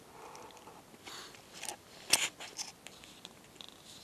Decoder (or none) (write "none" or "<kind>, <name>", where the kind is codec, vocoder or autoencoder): none